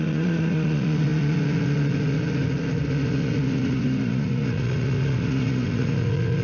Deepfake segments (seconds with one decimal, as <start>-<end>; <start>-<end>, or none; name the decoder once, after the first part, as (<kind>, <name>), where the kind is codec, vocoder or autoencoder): 0.0-6.4 (vocoder, Vocos)

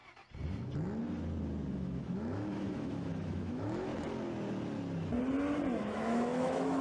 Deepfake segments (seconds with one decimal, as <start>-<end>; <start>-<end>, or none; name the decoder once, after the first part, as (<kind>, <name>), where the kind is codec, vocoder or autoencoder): 1.7-3.9 (autoencoder, DAC-VAE); 5.8-6.8

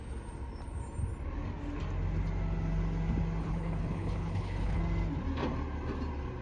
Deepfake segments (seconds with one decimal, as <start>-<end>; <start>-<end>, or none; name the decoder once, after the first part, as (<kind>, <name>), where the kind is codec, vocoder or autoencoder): 3.4-4.8 (codec, HILCodec)

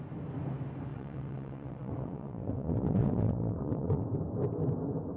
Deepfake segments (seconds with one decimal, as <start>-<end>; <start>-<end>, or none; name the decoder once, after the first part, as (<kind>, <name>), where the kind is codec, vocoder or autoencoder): 0.9-4.0 (vocoder, WaveNeXt)